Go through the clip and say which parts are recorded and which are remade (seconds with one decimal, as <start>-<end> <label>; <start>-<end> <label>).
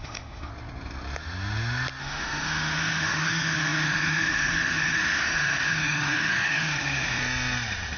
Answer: 0.0-0.5 remade; 0.5-2.0 recorded; 2.0-7.2 remade; 7.2-8.0 recorded